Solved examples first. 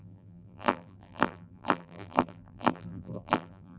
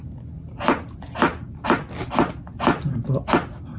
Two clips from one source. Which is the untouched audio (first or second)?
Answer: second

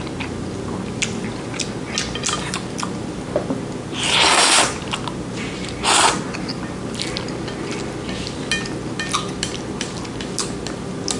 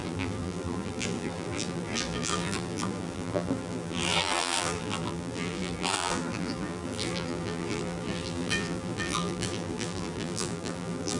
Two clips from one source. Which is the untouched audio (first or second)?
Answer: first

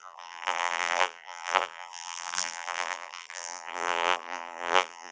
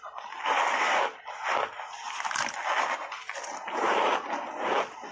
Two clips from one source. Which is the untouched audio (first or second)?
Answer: second